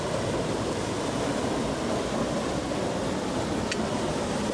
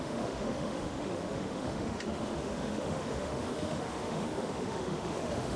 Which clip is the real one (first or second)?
first